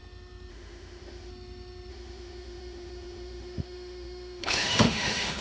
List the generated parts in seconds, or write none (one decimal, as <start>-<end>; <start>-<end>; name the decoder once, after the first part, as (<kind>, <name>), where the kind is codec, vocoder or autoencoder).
0.5-1.3 (autoencoder, DAC-VAE); 1.9-5.4